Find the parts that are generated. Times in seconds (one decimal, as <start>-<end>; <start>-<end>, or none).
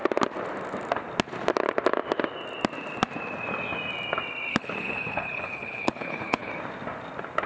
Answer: 4.5-6.5